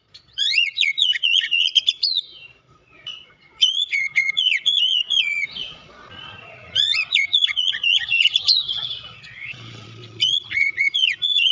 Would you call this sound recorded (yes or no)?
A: no